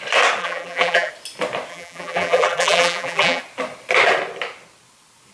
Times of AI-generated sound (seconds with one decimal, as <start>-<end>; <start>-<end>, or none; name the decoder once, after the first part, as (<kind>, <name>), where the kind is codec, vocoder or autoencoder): 0.4-1.1 (vocoder, BigVGAN v2); 1.7-3.4